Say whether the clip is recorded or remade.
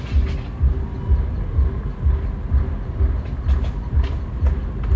recorded